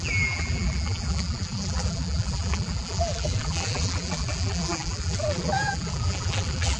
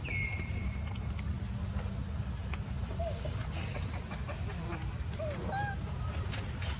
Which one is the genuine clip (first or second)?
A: second